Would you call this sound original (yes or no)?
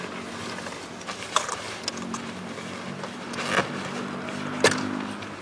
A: yes